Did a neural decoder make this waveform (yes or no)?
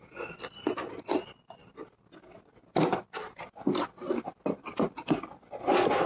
no